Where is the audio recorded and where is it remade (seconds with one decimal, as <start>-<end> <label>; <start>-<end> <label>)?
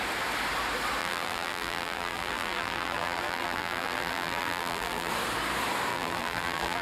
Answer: 0.0-1.0 recorded; 1.0-5.1 remade; 5.1-5.9 recorded; 5.9-6.8 remade